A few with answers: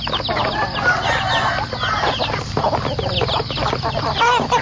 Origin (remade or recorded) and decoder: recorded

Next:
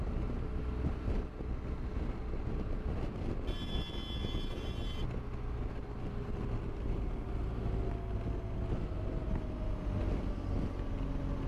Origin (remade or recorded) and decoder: recorded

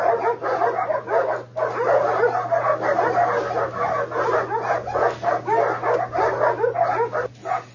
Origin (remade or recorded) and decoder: recorded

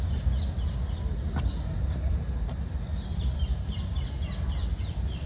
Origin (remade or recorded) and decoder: recorded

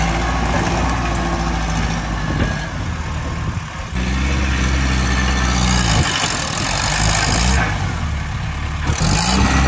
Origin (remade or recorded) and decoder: recorded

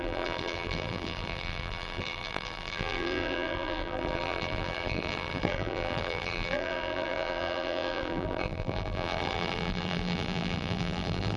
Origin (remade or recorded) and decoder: remade, vocoder, BigVGAN v2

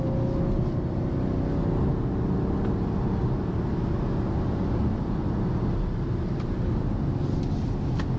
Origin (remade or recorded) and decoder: recorded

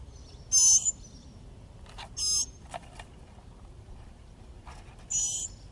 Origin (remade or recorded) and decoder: recorded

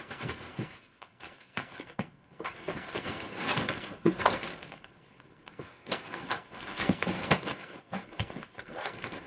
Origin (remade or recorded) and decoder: remade, codec, SNAC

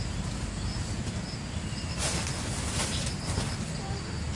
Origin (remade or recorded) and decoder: recorded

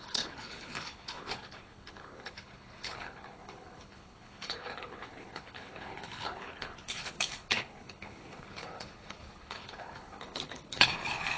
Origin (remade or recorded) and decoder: remade, codec, HILCodec